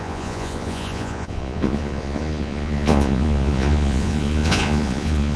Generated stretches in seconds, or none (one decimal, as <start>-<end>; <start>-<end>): 0.0-5.4